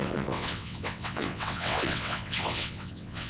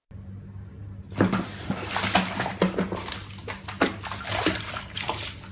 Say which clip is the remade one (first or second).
first